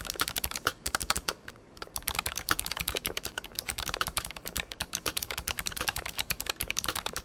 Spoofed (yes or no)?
yes